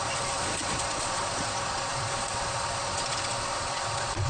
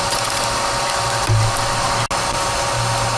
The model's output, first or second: first